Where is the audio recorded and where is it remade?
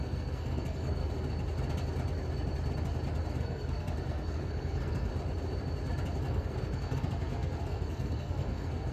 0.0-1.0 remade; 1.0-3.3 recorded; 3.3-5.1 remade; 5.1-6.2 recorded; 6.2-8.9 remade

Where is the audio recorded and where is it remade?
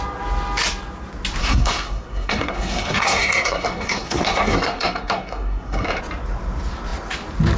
0.0-1.4 recorded; 1.4-6.0 remade; 6.0-7.6 recorded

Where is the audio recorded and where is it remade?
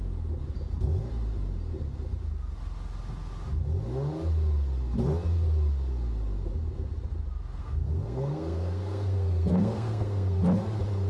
0.0-7.6 recorded; 7.6-10.4 remade; 10.4-11.1 recorded